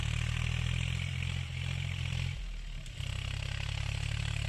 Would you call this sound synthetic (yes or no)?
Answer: yes